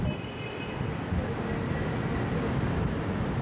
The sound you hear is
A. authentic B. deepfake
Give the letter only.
A